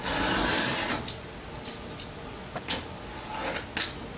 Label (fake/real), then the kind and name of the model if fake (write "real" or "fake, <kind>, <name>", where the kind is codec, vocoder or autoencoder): real